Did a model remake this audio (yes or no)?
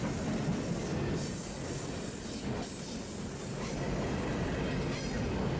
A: no